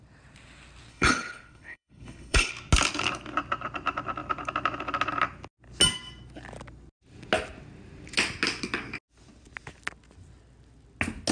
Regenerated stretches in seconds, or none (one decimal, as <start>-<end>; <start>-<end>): 0.9-2.5